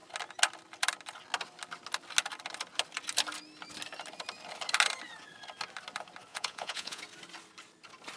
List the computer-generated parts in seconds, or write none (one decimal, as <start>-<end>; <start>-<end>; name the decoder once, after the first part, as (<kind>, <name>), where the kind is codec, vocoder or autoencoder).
6.3-7.0 (vocoder, Vocos)